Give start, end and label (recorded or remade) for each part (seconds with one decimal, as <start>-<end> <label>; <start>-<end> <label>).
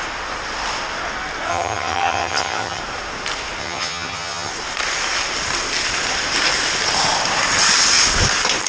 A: 0.0-1.5 recorded; 1.5-2.8 remade; 2.8-3.6 recorded; 3.6-4.5 remade; 4.5-8.7 recorded